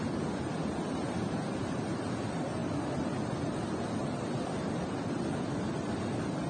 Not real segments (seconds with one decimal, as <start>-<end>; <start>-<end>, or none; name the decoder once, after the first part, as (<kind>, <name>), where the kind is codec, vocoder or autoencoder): 0.0-0.6 (vocoder, BigVGAN v2); 1.8-2.6; 4.4-6.5